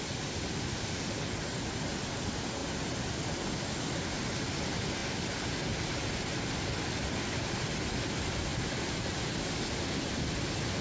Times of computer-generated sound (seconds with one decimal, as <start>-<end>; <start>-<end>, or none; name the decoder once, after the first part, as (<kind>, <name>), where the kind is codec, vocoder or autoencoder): none